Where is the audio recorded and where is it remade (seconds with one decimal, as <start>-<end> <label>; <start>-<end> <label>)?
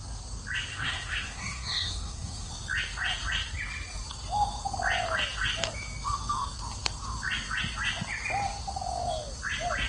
0.0-0.7 recorded; 0.7-2.5 remade; 2.5-9.9 recorded